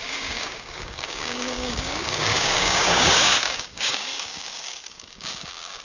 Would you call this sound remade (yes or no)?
yes